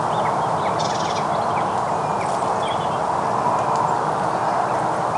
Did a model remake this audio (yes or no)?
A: no